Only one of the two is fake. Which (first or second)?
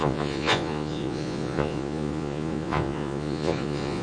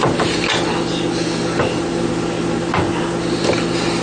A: first